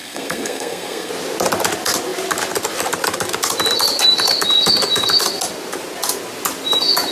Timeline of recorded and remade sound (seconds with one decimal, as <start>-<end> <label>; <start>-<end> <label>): 0.0-1.1 remade; 1.1-7.1 recorded